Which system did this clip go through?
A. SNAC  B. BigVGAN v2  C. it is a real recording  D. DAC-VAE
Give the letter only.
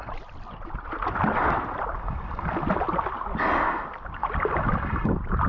C